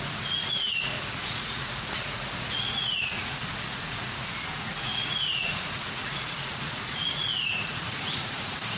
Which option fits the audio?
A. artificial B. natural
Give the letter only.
A